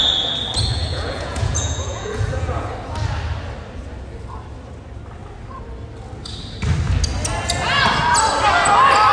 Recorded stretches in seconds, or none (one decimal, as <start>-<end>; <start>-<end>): 0.0-0.9; 2.7-9.1